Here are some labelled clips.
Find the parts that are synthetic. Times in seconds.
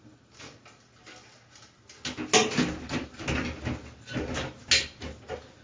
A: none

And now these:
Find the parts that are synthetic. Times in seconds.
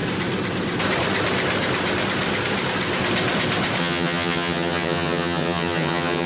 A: 3.8-6.3 (vocoder, HiFi-GAN)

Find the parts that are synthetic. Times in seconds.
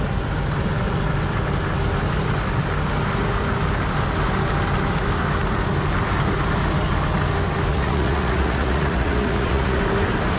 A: 7.7-9.8 (vocoder, Vocos)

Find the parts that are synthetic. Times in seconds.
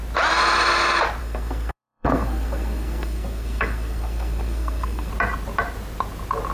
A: 1.2-5.1 (codec, SNAC)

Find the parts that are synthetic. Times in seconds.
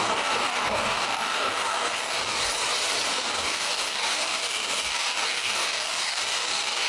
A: 0.0-2.4 (codec, DAC); 3.1-6.9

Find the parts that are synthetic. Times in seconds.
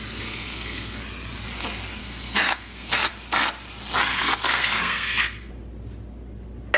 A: 0.0-1.0 (codec, SNAC); 2.0-3.1; 4.1-5.5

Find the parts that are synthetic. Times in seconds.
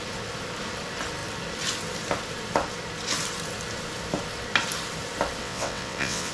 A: 5.4-6.3 (vocoder, WaveNeXt)